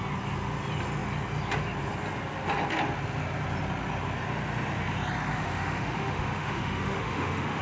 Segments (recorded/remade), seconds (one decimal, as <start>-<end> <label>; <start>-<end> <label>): 0.0-5.3 recorded; 5.3-7.6 remade